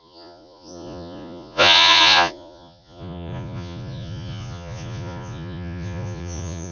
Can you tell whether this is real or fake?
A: fake